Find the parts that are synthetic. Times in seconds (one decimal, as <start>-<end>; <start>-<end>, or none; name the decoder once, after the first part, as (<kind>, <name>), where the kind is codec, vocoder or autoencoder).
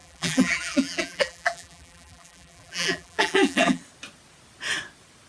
0.0-3.8 (vocoder, BigVGAN v2)